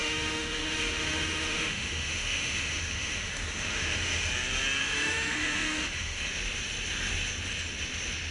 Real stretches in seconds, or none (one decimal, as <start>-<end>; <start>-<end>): 4.3-4.8; 6.3-8.3